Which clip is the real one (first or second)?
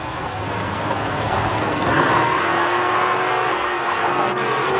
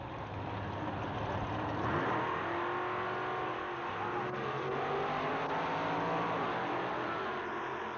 second